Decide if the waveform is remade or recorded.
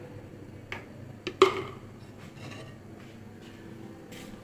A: recorded